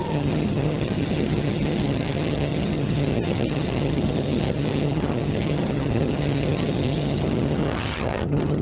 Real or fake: fake